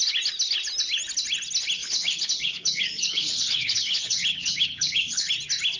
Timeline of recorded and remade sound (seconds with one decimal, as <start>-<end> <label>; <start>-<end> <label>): 0.0-1.8 recorded; 1.8-5.3 remade; 5.3-5.8 recorded